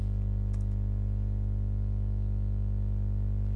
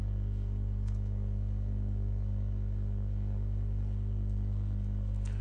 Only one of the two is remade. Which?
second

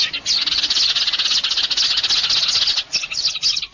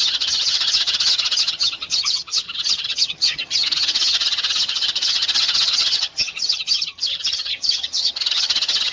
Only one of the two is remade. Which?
second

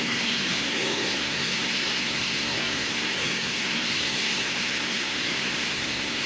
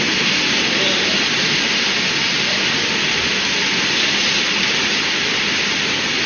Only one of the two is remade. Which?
first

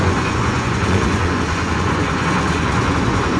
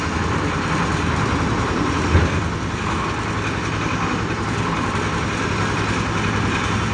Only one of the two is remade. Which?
first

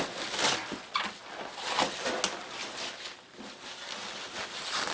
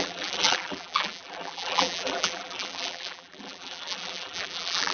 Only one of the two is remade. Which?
second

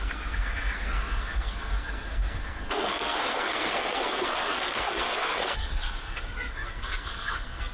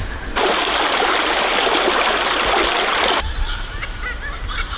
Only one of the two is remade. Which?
first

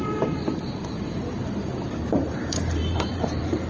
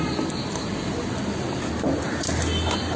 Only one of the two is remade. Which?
first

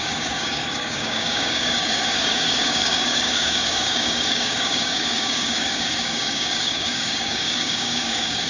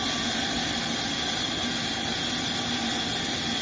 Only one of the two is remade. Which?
first